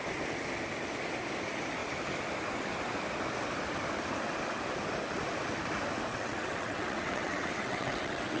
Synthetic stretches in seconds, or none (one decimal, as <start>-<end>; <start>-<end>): 6.1-8.4